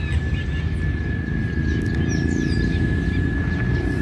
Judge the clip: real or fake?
real